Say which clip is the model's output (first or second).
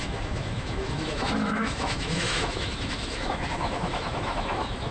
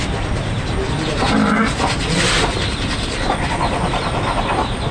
first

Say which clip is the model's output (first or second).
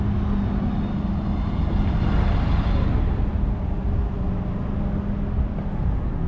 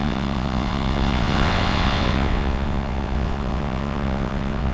second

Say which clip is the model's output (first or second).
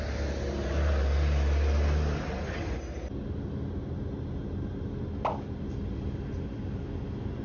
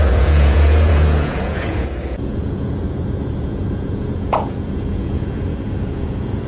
second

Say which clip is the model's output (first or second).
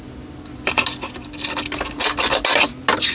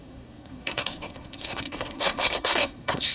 second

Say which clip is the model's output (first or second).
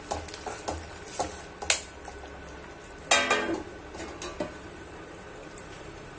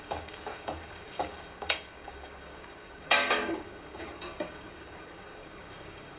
second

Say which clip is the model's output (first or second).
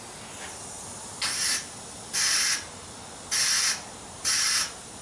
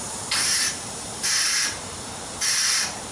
second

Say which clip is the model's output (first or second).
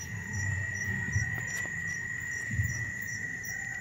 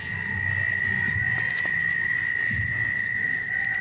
first